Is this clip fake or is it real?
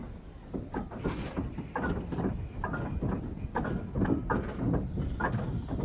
real